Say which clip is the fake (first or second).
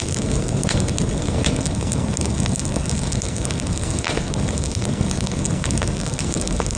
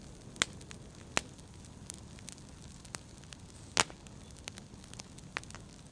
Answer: first